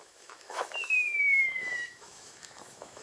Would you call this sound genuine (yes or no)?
no